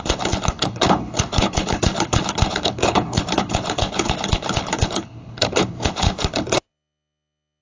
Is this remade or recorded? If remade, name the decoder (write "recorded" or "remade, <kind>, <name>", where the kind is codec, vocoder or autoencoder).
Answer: remade, codec, HILCodec